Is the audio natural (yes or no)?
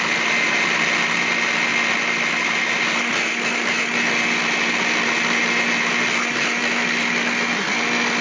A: yes